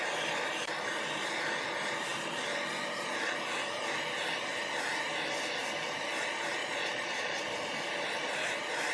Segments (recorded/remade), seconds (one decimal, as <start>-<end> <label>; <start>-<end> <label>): 0.0-6.6 recorded; 6.6-7.4 remade; 7.4-8.9 recorded